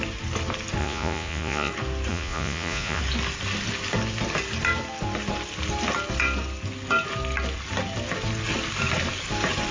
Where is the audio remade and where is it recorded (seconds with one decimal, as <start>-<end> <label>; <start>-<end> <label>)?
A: 0.0-0.8 recorded; 0.8-1.7 remade; 1.7-2.1 recorded; 2.1-3.0 remade; 3.0-9.7 recorded